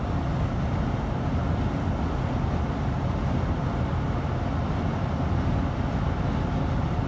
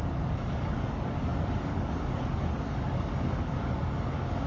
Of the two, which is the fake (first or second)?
second